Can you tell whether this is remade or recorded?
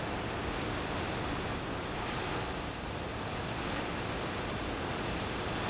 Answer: recorded